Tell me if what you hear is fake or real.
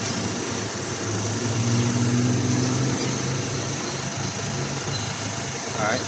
real